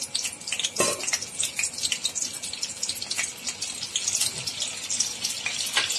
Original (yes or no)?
yes